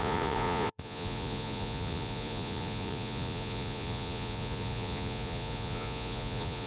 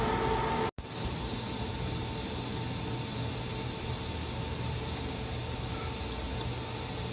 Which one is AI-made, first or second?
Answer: first